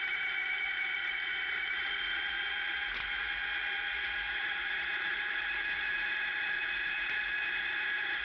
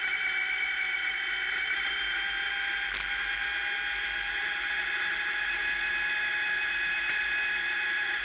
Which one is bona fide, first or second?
second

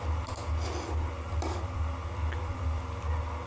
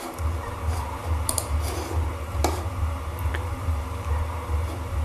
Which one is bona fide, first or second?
first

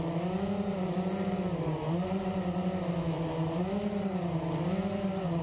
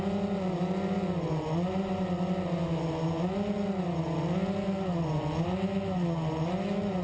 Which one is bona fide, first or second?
second